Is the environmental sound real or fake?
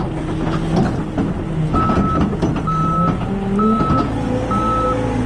real